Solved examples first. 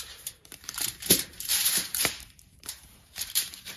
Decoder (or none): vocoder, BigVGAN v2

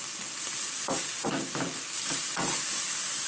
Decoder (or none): vocoder, BigVGAN v2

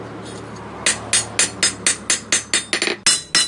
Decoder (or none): none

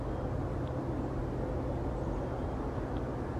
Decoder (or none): none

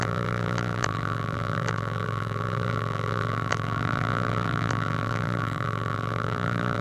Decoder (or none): vocoder, BigVGAN v2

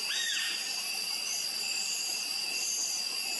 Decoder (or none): none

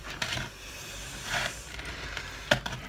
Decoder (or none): vocoder, BigVGAN v2